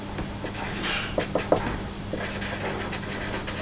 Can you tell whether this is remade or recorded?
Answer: recorded